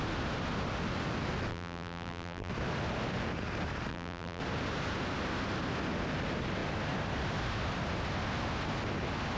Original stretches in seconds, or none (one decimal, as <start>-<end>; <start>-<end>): 0.0-1.5; 2.5-3.9; 4.4-9.4